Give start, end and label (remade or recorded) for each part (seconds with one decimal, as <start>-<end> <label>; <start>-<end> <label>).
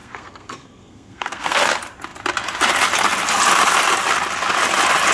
0.0-1.6 remade; 1.6-5.1 recorded